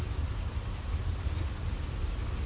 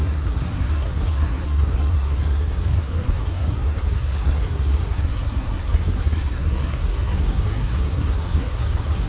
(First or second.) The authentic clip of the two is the first